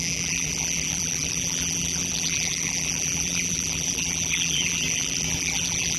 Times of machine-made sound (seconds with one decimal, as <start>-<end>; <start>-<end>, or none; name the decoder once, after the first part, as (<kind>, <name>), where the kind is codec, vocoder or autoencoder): 0.0-6.0 (vocoder, BigVGAN v2)